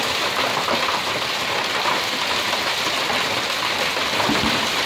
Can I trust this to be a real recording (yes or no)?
yes